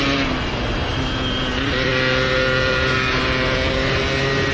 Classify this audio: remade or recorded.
recorded